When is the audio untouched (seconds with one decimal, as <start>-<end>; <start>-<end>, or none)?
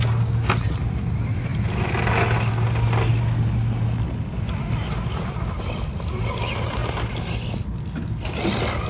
0.0-8.9